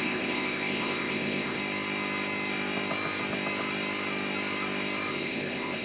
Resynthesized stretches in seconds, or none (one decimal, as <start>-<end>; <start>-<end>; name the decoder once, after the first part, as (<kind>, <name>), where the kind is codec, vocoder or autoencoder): 0.0-1.6 (codec, ZipCodec); 5.1-5.8